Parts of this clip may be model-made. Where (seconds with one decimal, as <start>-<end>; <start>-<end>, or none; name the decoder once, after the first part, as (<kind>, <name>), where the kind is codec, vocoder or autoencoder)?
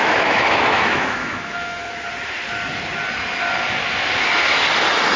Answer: 0.0-1.8 (autoencoder, DAC-VAE)